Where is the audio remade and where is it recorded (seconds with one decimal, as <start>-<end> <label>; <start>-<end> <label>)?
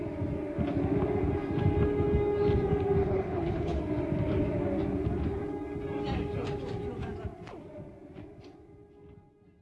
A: 0.0-3.0 recorded; 3.0-3.8 remade; 3.8-9.6 recorded